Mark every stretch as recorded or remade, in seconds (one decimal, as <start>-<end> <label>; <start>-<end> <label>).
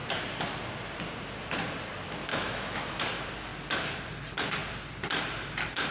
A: 0.0-2.3 recorded; 2.3-3.0 remade; 3.0-5.9 recorded